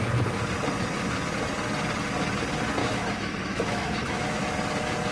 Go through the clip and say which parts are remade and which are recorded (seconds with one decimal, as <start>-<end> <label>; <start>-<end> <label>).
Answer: 0.0-2.8 recorded; 2.8-4.4 remade; 4.4-5.1 recorded

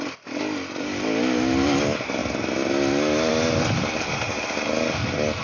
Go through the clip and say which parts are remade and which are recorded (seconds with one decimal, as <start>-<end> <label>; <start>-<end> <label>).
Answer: 0.0-5.4 recorded

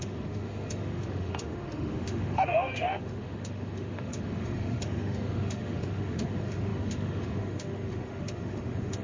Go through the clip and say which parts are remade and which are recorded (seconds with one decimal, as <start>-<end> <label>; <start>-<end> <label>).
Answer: 0.0-9.0 remade